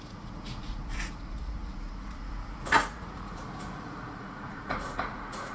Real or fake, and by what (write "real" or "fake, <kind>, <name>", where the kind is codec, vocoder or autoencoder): fake, vocoder, Vocos